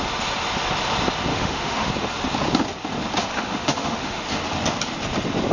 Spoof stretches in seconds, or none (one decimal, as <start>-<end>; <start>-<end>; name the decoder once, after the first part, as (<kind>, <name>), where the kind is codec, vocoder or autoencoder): 1.3-1.9 (autoencoder, DAC-VAE); 3.3-4.2